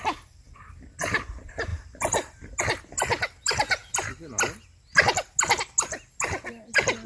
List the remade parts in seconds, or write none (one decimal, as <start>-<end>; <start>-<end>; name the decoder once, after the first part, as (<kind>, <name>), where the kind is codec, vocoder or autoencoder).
none